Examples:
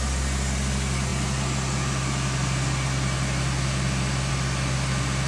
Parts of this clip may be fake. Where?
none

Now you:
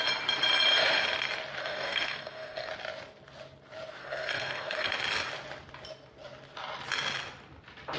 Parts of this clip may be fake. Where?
1.6-2.7 (codec, SNAC); 4.0-4.9

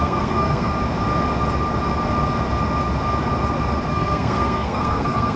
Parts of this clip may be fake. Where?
0.0-0.7 (codec, SNAC); 3.9-5.4

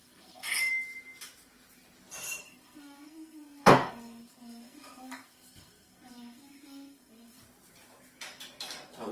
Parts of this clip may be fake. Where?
0.0-0.7 (codec, SNAC); 2.4-7.4

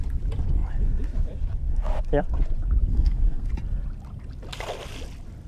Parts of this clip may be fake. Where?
2.9-3.5 (codec, SNAC)

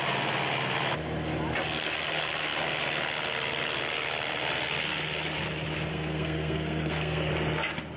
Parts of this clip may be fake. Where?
5.9-7.3 (codec, SNAC)

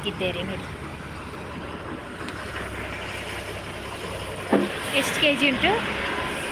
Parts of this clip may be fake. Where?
none

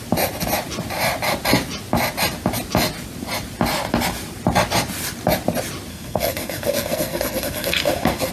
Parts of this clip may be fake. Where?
5.9-8.3 (codec, SNAC)